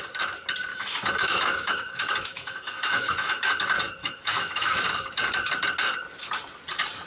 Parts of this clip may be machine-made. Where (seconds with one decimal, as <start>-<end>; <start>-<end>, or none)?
0.7-3.6; 4.0-4.8